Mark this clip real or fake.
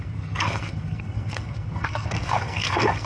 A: fake